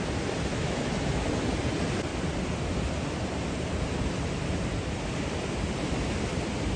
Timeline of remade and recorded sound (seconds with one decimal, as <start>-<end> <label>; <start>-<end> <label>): 0.0-0.5 recorded; 0.5-1.3 remade; 1.3-6.8 recorded